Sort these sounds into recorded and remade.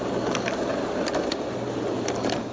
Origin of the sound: recorded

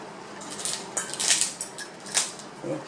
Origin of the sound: recorded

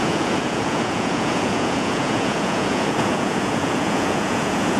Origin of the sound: remade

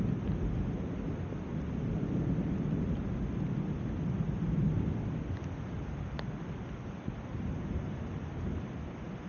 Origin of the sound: recorded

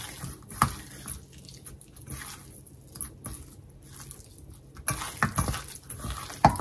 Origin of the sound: recorded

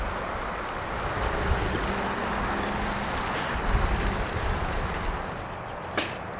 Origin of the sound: recorded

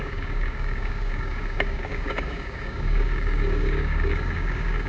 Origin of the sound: remade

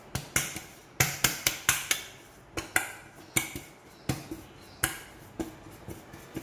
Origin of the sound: recorded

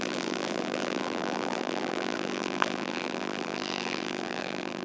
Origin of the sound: remade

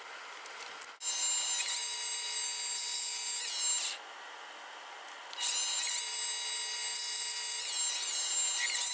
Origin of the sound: recorded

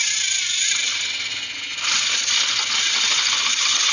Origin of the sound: recorded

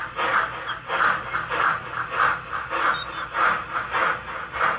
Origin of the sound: recorded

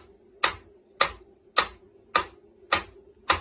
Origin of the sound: recorded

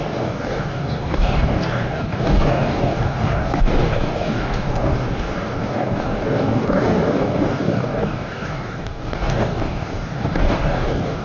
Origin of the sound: remade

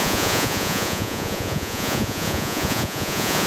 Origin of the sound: remade